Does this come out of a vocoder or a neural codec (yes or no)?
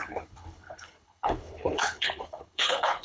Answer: yes